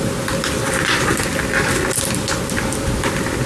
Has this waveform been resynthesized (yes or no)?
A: no